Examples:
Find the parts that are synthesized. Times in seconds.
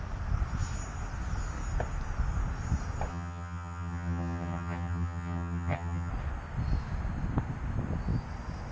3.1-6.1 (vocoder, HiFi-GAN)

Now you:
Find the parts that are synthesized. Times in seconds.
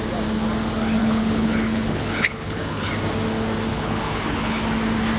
1.0-2.9 (codec, HILCodec); 3.7-4.6